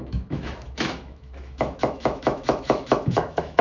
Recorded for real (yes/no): no